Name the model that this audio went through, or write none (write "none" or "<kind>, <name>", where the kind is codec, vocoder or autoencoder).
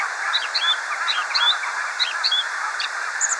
vocoder, BigVGAN v2